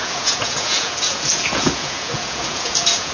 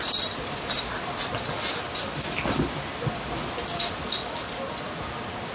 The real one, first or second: second